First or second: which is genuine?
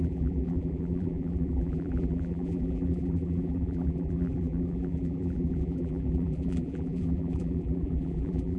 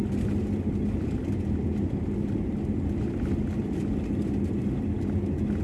second